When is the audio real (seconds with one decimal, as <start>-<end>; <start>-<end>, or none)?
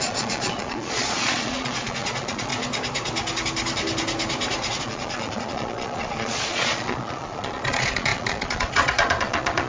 2.5-4.8